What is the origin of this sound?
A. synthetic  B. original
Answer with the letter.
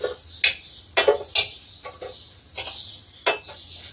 B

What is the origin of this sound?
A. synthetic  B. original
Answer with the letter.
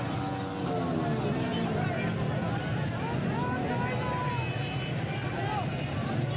B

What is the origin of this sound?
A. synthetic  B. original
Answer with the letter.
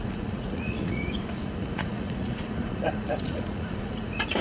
A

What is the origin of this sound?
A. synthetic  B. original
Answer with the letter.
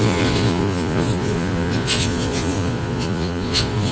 A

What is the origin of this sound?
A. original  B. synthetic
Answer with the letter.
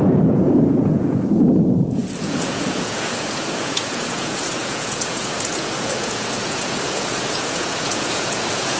B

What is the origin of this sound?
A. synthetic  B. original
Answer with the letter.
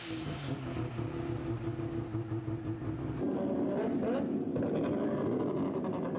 B